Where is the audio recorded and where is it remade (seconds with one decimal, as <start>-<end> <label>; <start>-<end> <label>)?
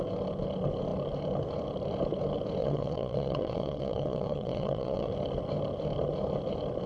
0.0-2.6 recorded; 2.6-5.1 remade; 5.1-6.9 recorded